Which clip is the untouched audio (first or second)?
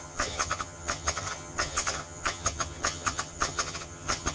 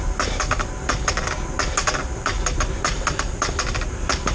second